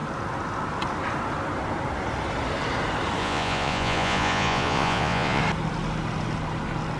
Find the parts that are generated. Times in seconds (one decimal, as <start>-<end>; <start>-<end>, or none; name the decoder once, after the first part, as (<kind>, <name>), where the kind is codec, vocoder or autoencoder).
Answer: 3.2-5.4 (vocoder, Vocos)